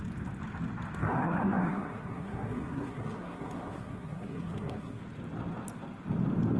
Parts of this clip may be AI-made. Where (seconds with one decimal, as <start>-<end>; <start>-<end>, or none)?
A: 1.0-5.0